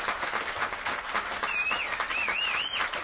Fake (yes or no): no